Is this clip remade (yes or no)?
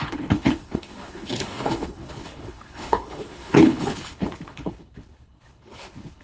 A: yes